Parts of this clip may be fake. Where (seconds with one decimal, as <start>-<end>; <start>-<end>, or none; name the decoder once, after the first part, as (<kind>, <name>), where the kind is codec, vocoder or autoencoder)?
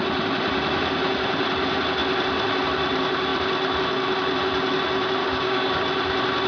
5.2-5.8 (codec, DAC)